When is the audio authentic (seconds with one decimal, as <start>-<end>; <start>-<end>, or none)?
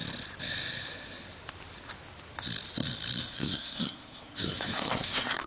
0.0-3.3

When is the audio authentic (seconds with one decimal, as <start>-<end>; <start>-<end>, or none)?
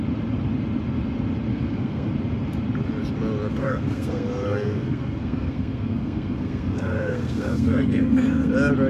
0.0-1.5; 2.1-3.6; 8.5-8.9